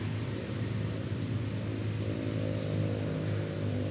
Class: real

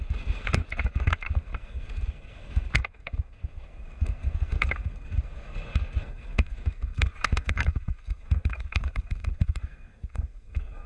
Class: fake